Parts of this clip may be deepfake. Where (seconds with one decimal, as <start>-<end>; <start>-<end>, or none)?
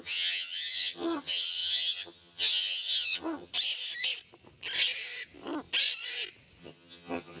0.0-3.5; 6.6-7.4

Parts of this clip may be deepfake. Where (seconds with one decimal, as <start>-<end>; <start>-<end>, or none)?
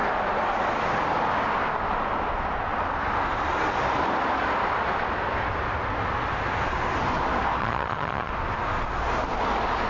7.6-8.3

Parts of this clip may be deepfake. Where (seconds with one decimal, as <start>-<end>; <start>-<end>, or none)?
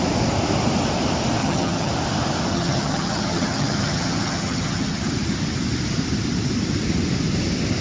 1.4-1.9; 2.5-5.0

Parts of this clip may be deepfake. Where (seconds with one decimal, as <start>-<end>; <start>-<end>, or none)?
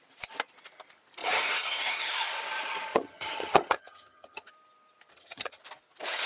1.2-2.1; 2.9-4.5; 5.1-5.6